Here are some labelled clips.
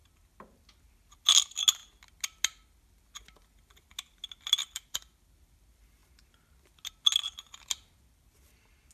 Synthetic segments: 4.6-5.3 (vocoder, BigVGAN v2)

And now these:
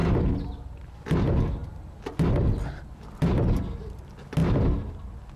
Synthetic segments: none

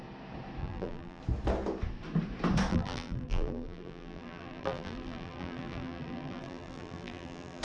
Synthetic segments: 0.6-1.2 (vocoder, BigVGAN v2); 2.7-7.6

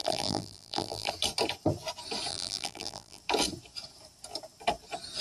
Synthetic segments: 0.0-1.1 (vocoder, BigVGAN v2); 2.3-3.2

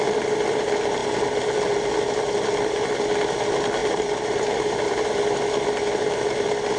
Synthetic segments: 3.8-5.2 (vocoder, BigVGAN v2)

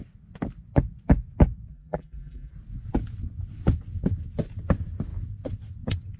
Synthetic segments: 1.7-2.5 (vocoder, BigVGAN v2)